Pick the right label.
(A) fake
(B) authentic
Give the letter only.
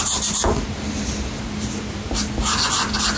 B